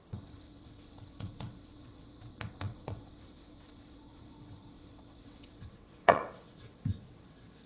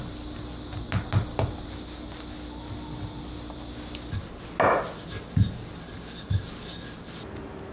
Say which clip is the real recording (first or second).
second